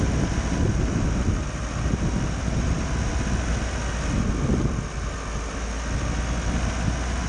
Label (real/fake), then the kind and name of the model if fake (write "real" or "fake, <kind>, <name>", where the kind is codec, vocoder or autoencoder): real